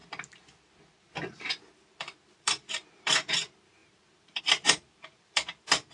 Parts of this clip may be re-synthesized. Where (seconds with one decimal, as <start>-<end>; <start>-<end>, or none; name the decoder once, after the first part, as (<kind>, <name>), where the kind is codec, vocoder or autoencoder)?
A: 1.7-5.9 (vocoder, BigVGAN v2)